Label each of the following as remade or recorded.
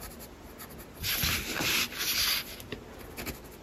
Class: recorded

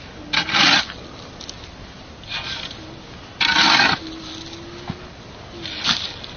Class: recorded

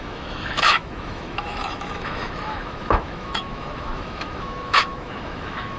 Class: remade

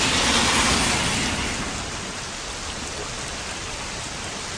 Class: recorded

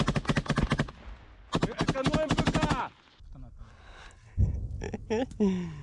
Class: recorded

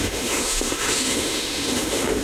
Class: remade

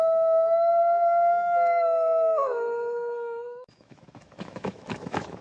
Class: remade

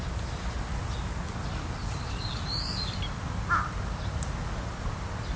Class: recorded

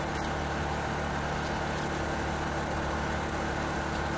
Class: recorded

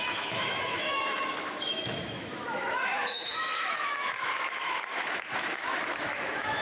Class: remade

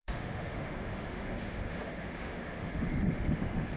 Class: remade